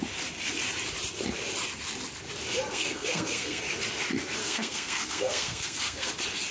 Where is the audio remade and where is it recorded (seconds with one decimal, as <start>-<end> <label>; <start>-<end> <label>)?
0.0-2.7 recorded; 2.7-3.6 remade; 3.6-4.4 recorded; 4.4-6.1 remade; 6.1-6.5 recorded